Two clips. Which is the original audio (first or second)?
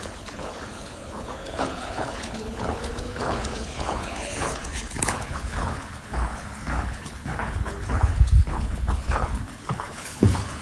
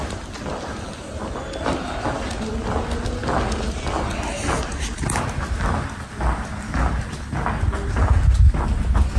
second